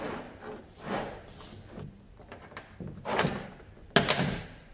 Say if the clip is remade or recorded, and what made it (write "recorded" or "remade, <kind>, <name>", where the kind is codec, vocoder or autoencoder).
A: recorded